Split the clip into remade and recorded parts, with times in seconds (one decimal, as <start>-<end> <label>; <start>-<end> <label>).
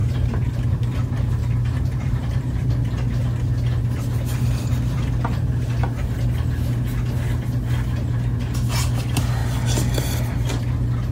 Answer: 0.0-0.6 remade; 0.6-1.4 recorded; 1.4-2.7 remade; 2.7-11.1 recorded